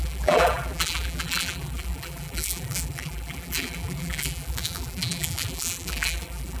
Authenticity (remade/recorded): remade